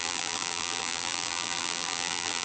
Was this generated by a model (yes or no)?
yes